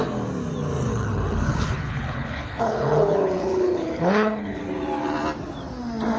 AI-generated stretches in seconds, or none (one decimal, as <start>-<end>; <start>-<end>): 0.9-4.6